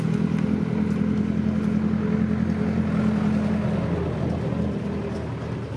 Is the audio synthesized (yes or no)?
no